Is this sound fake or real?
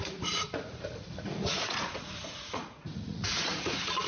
fake